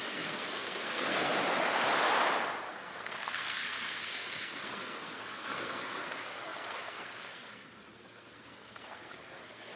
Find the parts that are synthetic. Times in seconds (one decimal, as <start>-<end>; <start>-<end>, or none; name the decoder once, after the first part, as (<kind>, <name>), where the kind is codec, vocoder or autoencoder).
0.0-1.3 (codec, SNAC); 2.7-9.8